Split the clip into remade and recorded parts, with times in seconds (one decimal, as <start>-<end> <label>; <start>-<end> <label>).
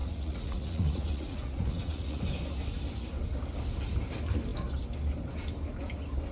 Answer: 0.0-2.2 remade; 2.2-6.3 recorded